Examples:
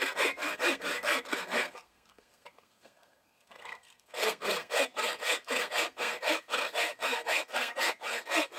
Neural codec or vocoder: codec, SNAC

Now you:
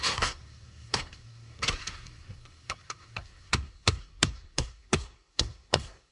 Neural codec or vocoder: codec, SNAC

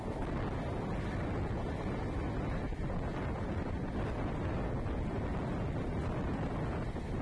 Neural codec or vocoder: none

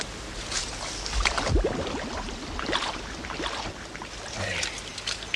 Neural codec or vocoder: none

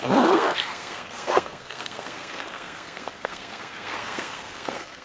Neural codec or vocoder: codec, SNAC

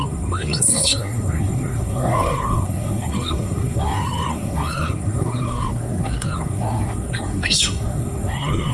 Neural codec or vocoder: codec, SNAC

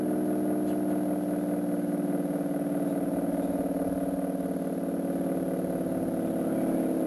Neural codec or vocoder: none